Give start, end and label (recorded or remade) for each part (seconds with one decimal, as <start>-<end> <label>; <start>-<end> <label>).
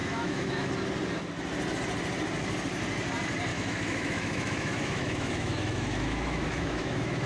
0.0-0.7 remade; 0.7-3.5 recorded; 3.5-7.3 remade